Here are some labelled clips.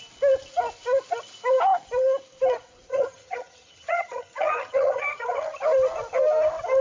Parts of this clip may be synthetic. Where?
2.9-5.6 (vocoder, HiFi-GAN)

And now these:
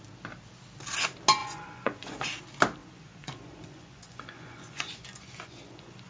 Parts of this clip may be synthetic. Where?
1.4-2.4 (vocoder, Vocos); 2.8-6.1

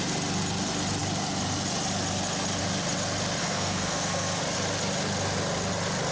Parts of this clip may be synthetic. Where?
3.4-4.4 (codec, SNAC)

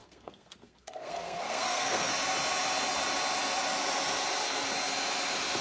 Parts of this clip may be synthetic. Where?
0.0-2.1 (codec, SNAC)

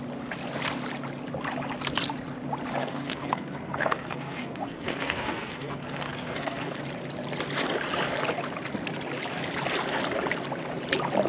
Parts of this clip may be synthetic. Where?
2.8-6.8 (codec, SNAC)

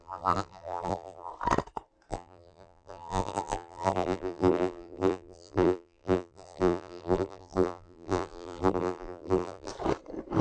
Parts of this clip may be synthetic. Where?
0.0-1.3 (vocoder, BigVGAN v2); 2.1-9.7

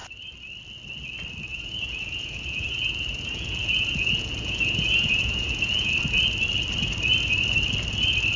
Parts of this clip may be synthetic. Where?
1.5-5.9 (vocoder, Vocos)

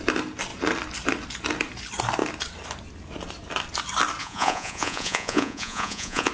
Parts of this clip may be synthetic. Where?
4.2-6.3 (vocoder, Vocos)